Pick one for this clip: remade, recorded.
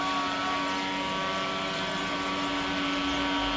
recorded